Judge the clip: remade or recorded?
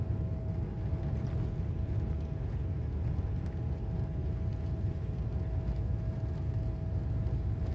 recorded